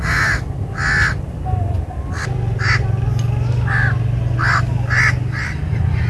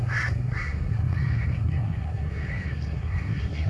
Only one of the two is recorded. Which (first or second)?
first